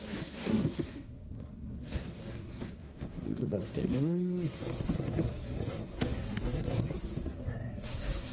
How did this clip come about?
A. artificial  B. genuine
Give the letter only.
A